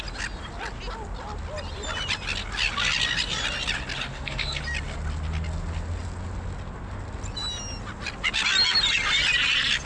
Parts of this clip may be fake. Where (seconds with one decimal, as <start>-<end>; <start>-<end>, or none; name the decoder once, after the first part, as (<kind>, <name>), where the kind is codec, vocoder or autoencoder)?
4.1-4.6 (codec, SNAC)